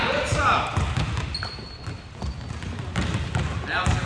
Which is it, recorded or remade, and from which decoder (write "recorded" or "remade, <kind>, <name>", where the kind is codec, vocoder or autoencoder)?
recorded